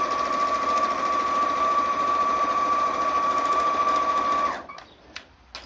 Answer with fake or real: real